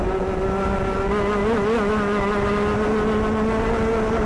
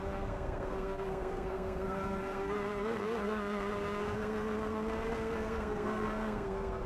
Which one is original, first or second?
first